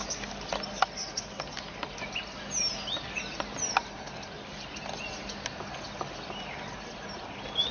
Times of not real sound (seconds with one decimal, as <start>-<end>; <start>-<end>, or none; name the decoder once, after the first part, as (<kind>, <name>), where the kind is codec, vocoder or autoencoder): none